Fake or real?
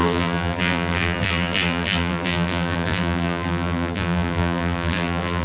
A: fake